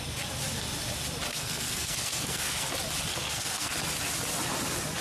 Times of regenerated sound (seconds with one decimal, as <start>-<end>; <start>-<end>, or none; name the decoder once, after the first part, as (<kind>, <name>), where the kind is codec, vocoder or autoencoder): 1.3-2.7 (codec, SNAC); 3.1-3.7